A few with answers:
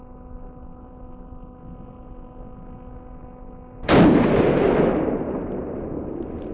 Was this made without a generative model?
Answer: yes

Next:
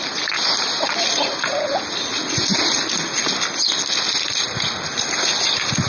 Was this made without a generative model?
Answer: yes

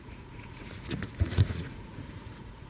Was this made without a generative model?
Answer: no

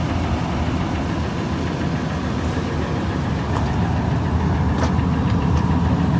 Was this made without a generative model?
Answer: yes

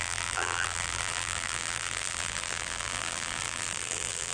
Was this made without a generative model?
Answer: no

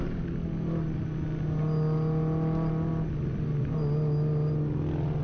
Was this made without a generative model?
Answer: yes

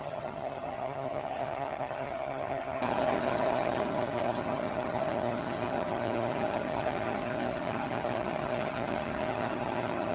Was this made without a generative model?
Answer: no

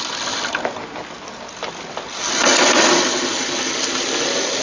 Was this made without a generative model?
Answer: yes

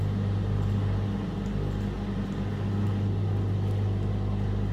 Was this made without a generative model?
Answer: yes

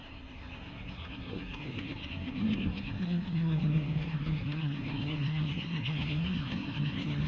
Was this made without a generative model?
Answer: no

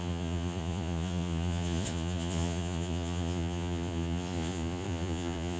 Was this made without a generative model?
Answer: no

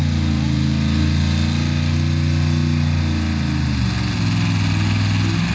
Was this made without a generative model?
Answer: yes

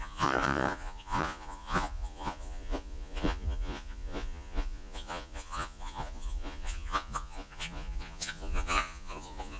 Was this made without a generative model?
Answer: no